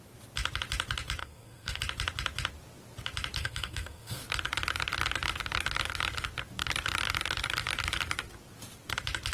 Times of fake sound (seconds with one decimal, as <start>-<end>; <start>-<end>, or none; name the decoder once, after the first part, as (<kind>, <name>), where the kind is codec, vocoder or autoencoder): 1.2-1.8 (codec, SNAC); 3.4-4.2